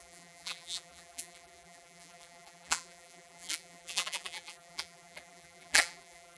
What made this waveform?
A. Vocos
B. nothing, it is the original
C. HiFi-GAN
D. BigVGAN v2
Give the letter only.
D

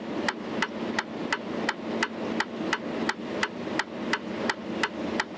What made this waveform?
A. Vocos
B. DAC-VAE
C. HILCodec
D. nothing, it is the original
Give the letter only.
D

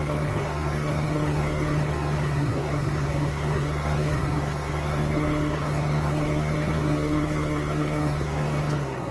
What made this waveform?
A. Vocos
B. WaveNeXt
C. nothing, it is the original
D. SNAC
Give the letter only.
D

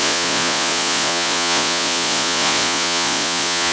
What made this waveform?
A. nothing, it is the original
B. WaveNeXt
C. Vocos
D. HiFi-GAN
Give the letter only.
C